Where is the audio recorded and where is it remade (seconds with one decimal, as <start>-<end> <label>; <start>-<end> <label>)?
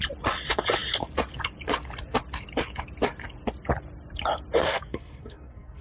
0.0-4.6 recorded; 4.6-5.8 remade